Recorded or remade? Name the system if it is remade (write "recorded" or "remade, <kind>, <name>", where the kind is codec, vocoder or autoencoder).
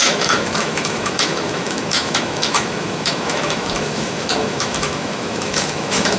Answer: remade, autoencoder, DAC-VAE